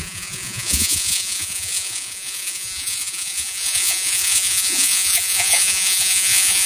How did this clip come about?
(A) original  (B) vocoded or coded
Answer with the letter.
B